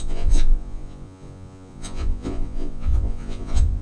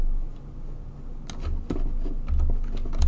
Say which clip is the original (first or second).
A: second